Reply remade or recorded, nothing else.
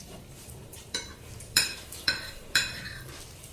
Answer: remade